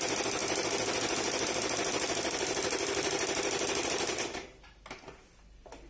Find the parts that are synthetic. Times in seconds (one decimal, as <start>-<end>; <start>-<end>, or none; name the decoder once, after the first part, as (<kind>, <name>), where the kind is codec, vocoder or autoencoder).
none